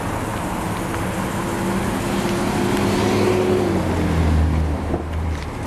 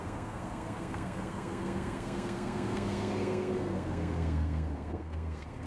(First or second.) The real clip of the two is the first